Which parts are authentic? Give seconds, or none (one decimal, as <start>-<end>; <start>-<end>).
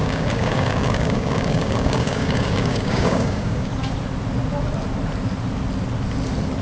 3.7-6.6